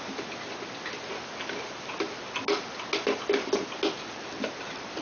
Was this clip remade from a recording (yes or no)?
no